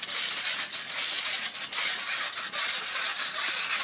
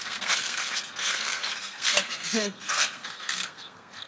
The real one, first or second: first